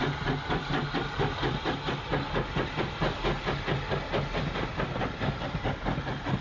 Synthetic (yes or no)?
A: no